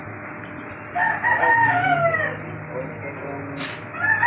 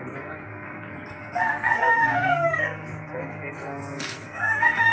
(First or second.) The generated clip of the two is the second